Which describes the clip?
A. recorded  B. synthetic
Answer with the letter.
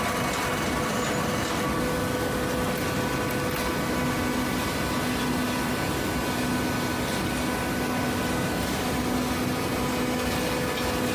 A